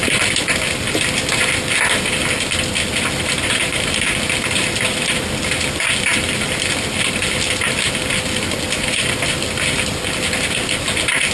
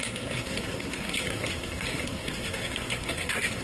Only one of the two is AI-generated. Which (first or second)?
second